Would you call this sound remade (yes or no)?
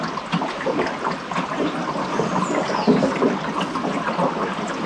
no